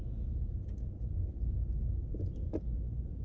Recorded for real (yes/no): yes